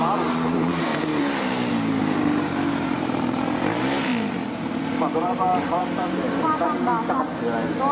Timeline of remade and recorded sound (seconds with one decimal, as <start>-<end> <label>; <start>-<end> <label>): 0.0-0.9 remade; 0.9-1.7 recorded; 1.7-4.1 remade; 4.1-4.9 recorded; 4.9-6.9 remade; 6.9-7.9 recorded